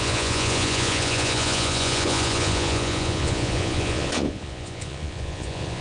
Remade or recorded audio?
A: remade